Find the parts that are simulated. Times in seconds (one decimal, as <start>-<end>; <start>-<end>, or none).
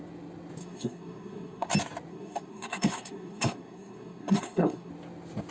0.6-1.7; 2.1-4.9